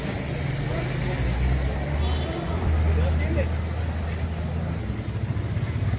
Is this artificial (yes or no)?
no